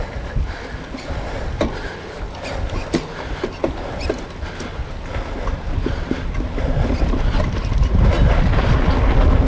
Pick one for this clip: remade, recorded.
recorded